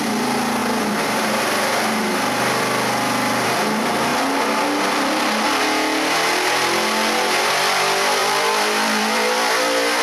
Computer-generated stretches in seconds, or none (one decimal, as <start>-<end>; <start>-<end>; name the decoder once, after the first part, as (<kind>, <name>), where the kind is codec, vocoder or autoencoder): 0.0-4.1 (vocoder, BigVGAN v2); 7.5-10.0